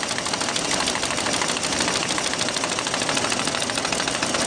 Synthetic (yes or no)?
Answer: no